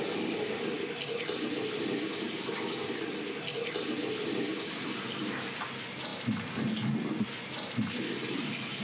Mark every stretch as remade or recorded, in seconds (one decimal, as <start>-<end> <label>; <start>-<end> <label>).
0.0-8.8 recorded